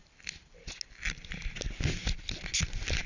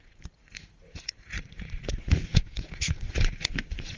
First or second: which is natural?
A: first